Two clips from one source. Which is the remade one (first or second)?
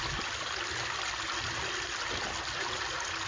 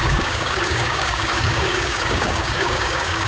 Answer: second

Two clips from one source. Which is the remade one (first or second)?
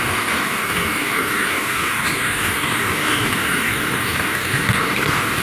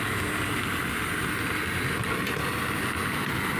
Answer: first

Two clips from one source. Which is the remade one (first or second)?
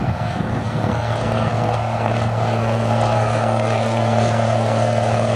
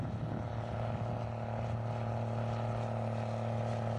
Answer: first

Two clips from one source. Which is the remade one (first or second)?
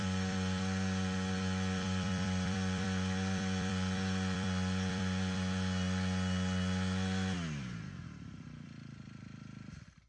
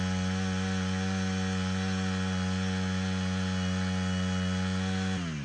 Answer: first